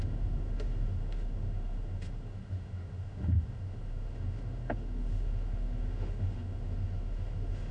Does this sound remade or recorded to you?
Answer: remade